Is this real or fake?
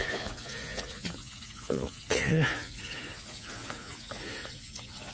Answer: fake